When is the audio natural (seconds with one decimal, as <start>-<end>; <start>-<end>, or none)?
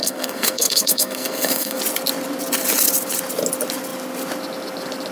1.8-5.1